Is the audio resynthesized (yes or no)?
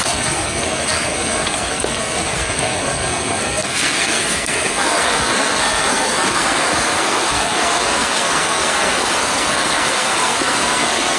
yes